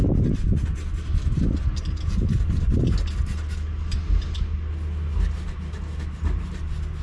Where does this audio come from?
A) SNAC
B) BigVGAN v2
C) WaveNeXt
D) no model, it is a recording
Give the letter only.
D